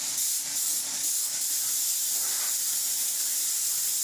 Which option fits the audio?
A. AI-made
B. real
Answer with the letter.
B